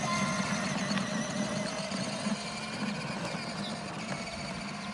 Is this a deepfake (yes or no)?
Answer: no